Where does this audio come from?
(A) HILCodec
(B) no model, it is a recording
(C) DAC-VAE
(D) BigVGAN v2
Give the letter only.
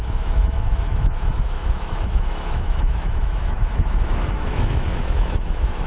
C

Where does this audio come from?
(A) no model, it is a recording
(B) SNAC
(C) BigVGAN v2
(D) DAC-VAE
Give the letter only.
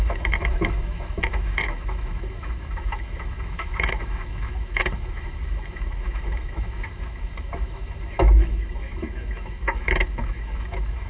D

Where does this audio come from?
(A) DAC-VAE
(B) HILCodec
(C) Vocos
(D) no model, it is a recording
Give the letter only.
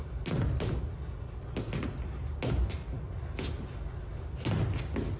D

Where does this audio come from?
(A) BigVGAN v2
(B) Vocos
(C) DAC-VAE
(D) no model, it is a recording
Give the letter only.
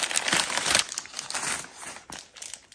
D